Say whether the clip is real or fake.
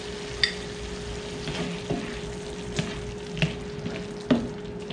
real